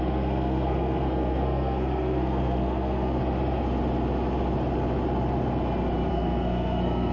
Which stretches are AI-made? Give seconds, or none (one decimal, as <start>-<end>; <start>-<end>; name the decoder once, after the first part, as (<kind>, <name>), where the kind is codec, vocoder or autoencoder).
0.0-3.2 (codec, SNAC); 6.1-7.1